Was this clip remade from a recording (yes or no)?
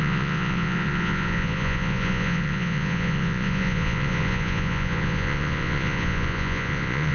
yes